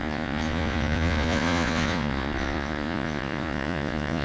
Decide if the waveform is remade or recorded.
remade